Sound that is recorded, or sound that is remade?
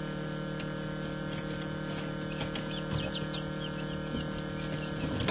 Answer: recorded